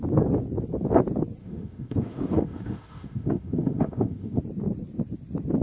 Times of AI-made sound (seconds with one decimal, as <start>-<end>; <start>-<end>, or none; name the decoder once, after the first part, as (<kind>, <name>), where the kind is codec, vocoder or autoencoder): 1.4-4.4 (autoencoder, DAC-VAE)